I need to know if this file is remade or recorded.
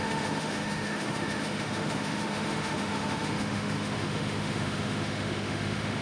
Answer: remade